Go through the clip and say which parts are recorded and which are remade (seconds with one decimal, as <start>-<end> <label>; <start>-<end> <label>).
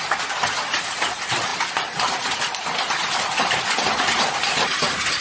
0.0-5.2 recorded